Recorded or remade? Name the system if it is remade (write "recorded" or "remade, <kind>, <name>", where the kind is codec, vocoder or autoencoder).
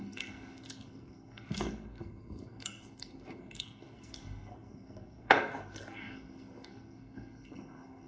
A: remade, codec, SNAC